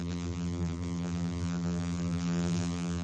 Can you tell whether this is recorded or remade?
remade